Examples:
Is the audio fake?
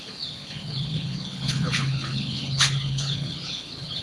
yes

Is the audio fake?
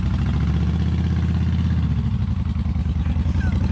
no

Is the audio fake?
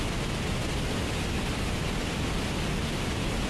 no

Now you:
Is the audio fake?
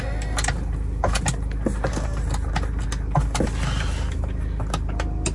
no